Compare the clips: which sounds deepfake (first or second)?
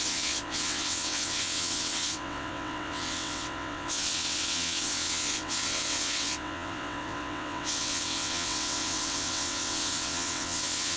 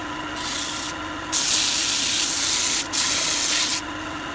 first